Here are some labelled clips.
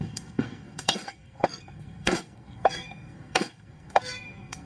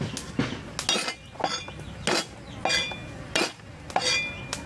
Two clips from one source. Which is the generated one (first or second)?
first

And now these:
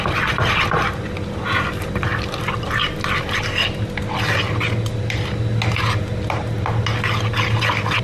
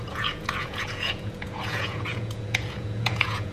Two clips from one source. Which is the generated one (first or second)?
second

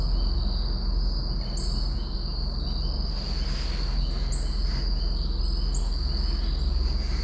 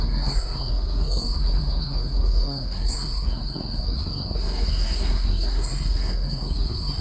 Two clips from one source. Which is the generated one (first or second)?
second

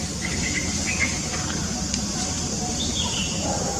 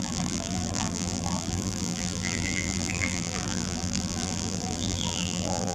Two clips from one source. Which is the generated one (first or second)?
second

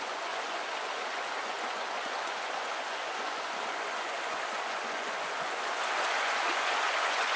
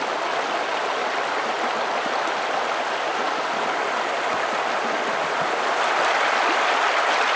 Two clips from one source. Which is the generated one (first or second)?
first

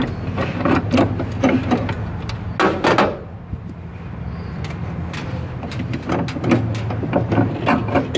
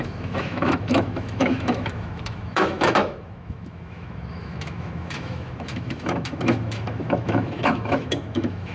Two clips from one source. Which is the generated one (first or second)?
second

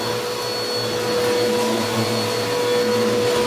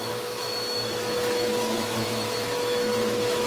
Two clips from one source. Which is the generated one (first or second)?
second